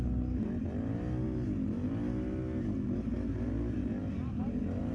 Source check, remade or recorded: recorded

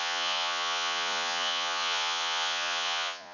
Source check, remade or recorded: remade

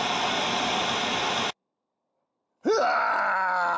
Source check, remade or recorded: recorded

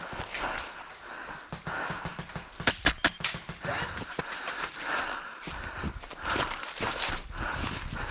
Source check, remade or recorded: recorded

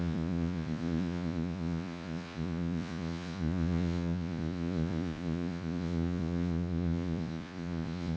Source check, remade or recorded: remade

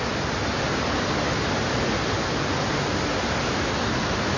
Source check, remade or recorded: recorded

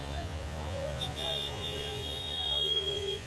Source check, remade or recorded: remade